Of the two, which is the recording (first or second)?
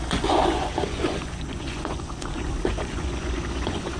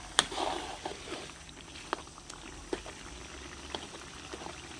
second